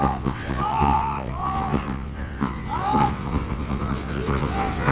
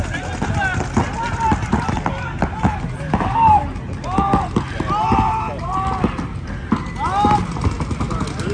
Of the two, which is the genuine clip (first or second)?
second